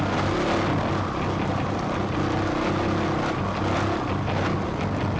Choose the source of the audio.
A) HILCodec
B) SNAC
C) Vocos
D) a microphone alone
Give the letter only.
D